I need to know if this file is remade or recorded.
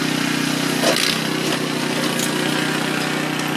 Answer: recorded